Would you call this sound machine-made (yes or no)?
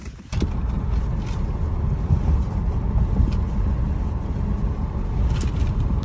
no